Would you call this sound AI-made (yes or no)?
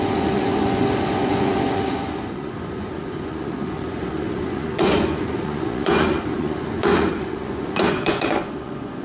yes